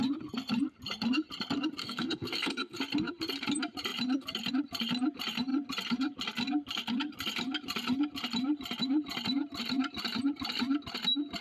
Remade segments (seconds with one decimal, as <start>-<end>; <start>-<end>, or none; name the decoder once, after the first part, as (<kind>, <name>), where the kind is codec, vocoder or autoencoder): 1.8-2.8 (codec, SNAC)